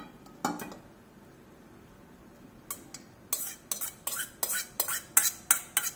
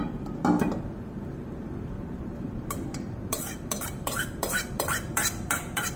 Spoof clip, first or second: second